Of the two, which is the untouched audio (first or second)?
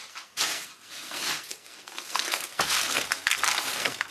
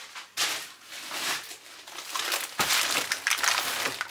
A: second